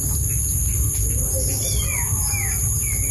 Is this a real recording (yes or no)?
yes